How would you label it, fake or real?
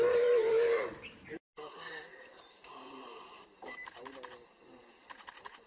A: fake